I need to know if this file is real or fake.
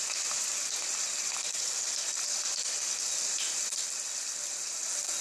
real